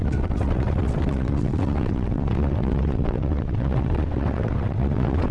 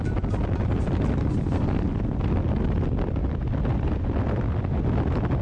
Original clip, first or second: second